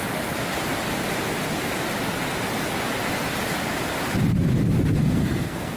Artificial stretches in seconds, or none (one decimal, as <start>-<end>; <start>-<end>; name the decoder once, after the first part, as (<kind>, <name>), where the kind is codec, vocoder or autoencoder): 5.0-5.8 (codec, SNAC)